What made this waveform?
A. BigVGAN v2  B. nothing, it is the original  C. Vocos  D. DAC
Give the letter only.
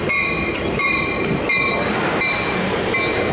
B